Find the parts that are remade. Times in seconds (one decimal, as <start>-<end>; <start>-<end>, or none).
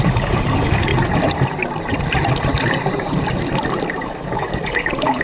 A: 0.0-0.9; 4.0-5.2